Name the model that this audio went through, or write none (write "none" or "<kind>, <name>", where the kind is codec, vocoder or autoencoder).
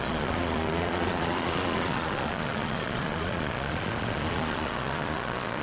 vocoder, Vocos